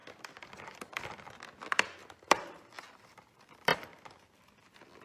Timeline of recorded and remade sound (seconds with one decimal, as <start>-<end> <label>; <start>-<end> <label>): 0.0-1.4 remade; 1.4-2.0 recorded; 2.0-2.8 remade; 2.8-3.7 recorded; 3.7-4.4 remade; 4.4-5.0 recorded